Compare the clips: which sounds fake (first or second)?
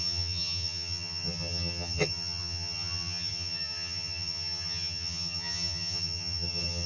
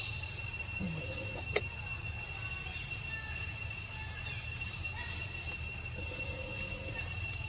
first